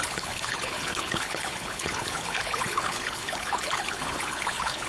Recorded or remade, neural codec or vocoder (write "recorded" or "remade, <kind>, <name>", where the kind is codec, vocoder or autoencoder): remade, codec, HILCodec